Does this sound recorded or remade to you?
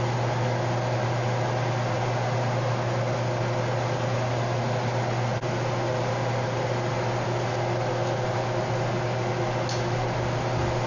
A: recorded